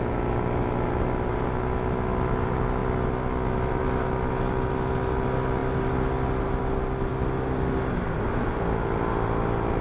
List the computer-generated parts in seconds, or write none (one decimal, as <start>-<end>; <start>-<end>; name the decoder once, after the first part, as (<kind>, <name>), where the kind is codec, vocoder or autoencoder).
none